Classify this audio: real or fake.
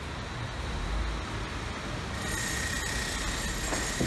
real